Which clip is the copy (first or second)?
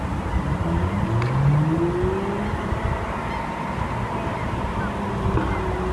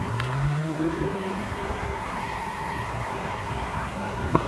second